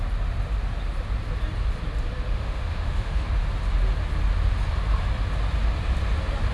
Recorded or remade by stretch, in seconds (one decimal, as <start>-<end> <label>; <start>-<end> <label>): 0.0-2.3 recorded; 2.3-3.2 remade; 3.2-6.5 recorded